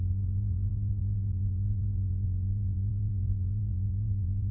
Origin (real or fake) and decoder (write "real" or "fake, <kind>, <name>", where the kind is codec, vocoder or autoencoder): fake, vocoder, Vocos